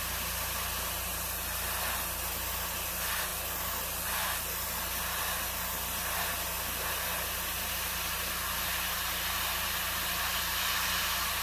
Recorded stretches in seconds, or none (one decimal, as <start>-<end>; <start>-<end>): 0.0-11.4